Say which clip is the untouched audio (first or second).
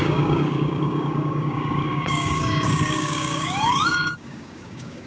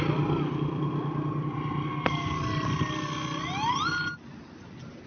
second